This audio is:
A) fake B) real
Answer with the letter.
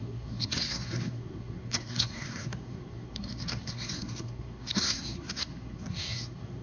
A